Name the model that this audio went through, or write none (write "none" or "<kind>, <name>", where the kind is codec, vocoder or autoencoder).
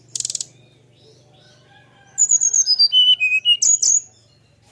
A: none